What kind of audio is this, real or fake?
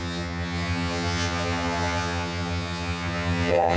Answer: fake